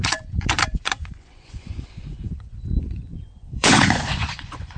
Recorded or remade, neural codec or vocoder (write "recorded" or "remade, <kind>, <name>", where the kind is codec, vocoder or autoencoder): remade, vocoder, Vocos